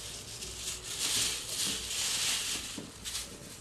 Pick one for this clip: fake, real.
real